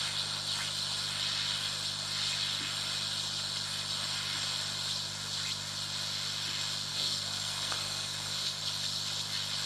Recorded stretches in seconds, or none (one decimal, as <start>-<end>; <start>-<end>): 0.0-6.9; 8.6-9.7